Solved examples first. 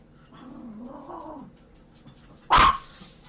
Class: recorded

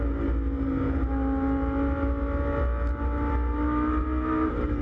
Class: recorded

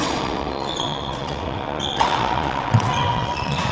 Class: remade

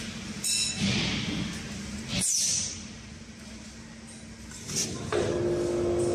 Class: recorded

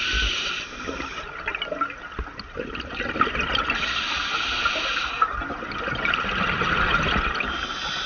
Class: recorded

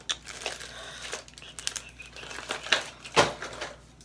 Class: recorded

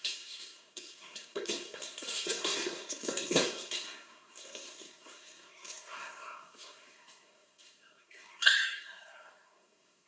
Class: remade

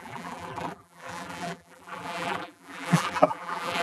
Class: remade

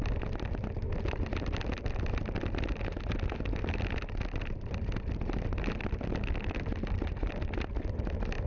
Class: recorded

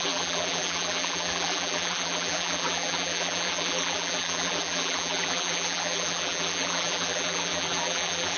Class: remade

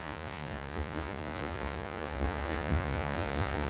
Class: remade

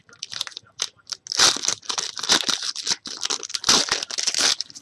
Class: recorded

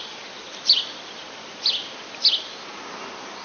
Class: recorded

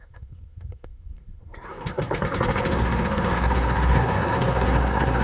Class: remade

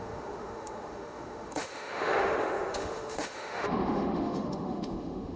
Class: remade